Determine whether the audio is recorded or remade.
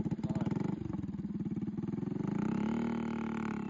recorded